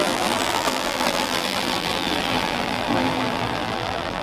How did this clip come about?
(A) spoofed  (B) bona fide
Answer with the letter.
A